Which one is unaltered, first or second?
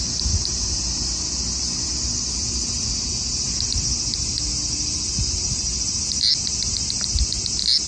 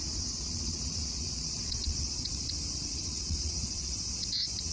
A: first